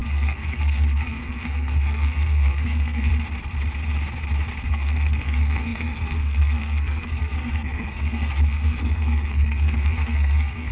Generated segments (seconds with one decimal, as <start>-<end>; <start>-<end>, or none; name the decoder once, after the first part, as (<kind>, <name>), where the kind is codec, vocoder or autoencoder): 0.0-3.1 (codec, SNAC); 4.7-10.7